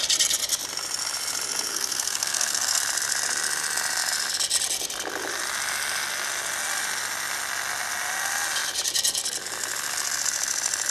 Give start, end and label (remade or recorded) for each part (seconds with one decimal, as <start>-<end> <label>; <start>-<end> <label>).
0.0-1.7 recorded; 1.7-2.8 remade; 2.8-10.9 recorded